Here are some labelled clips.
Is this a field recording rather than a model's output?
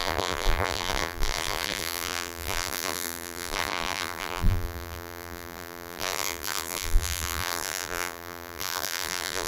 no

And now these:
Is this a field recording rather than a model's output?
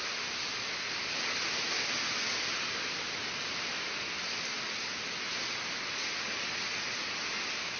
yes